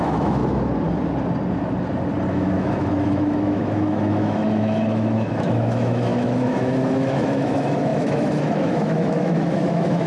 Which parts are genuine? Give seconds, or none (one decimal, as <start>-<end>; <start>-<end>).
0.4-2.3